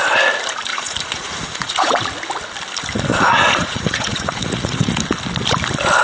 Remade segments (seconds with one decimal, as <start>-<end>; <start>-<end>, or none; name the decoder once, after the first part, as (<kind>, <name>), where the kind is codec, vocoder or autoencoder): 0.7-2.0 (vocoder, Vocos); 3.1-5.0